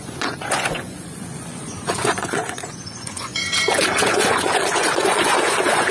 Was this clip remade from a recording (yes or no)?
yes